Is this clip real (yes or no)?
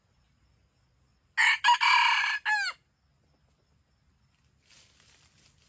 yes